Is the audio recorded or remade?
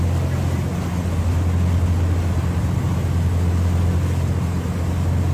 recorded